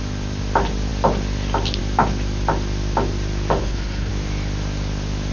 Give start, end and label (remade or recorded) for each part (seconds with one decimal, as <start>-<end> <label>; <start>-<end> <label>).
0.0-3.6 recorded; 3.6-4.1 remade; 4.1-5.3 recorded

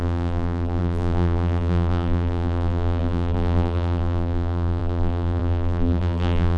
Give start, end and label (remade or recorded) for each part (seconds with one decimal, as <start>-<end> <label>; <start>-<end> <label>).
0.0-6.6 remade

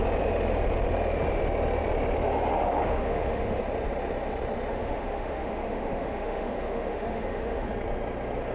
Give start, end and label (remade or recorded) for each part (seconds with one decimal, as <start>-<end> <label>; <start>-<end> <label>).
0.0-2.5 recorded; 2.5-3.6 remade; 3.6-4.7 recorded; 4.7-7.7 remade; 7.7-8.5 recorded

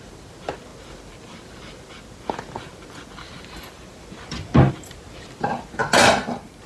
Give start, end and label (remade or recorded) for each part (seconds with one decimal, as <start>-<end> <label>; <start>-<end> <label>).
0.0-6.7 recorded

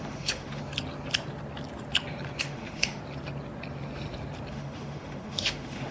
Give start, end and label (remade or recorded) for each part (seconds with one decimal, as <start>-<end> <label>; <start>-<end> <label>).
0.0-0.6 remade; 0.6-2.4 recorded; 2.4-3.0 remade; 3.0-4.5 recorded; 4.5-5.9 remade

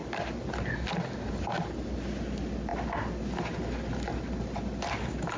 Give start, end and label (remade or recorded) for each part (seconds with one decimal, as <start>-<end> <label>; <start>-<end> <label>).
0.0-5.4 recorded